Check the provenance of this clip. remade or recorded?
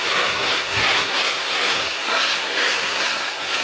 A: remade